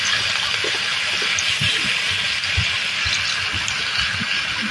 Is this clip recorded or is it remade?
recorded